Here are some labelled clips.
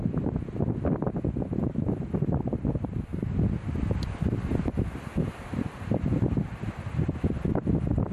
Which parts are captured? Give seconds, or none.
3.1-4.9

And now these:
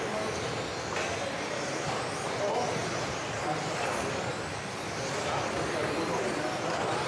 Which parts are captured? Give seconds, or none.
0.0-5.8; 6.3-7.1

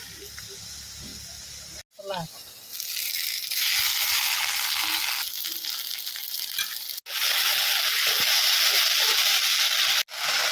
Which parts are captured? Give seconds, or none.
0.0-10.5

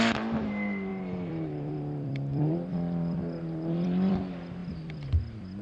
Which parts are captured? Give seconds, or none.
0.0-0.9; 4.1-4.6